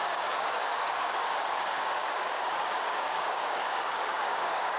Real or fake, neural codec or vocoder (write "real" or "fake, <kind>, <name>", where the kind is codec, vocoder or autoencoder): fake, codec, DAC